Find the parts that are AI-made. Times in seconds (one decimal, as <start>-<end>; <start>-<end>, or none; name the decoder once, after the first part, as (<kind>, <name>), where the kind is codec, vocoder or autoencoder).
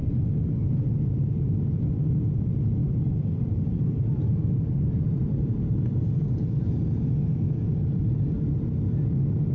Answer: 2.8-6.7 (vocoder, BigVGAN v2)